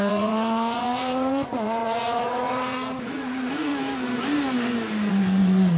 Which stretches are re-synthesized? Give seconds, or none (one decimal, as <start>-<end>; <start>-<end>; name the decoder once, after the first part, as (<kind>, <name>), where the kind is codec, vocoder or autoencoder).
0.0-3.7 (vocoder, Vocos); 5.1-5.8